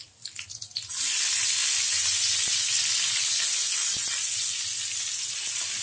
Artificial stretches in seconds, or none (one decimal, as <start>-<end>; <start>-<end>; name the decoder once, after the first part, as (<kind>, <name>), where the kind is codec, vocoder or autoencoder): none